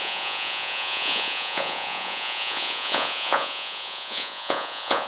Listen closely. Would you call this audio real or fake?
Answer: fake